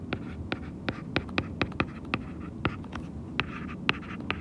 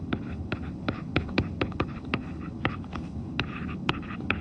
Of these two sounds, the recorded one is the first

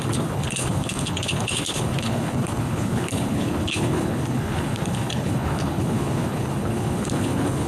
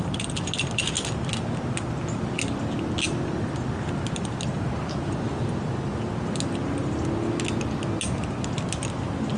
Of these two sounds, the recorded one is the second